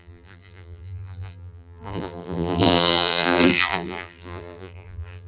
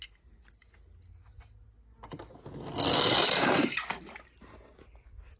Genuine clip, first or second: second